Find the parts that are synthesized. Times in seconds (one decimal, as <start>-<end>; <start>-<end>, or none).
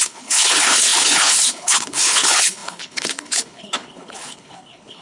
0.0-5.0